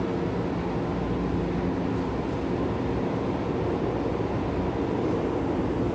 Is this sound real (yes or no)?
yes